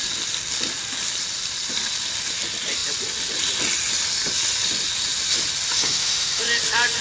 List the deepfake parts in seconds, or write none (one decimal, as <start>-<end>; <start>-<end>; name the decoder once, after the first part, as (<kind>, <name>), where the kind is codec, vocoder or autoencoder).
5.8-6.4 (autoencoder, DAC-VAE)